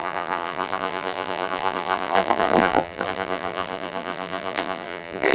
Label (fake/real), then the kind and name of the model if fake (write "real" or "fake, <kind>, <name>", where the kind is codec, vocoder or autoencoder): fake, vocoder, BigVGAN v2